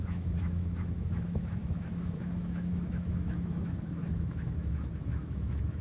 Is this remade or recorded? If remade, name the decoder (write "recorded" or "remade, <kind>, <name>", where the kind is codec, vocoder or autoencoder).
remade, autoencoder, DAC-VAE